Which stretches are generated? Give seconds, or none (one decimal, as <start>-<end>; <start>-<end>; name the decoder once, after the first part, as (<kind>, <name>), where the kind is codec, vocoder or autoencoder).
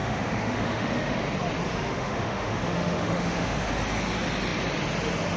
0.0-1.2 (autoencoder, DAC-VAE); 1.7-3.7